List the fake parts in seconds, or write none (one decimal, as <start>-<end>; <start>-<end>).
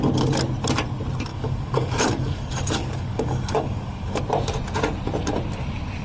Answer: 1.3-4.2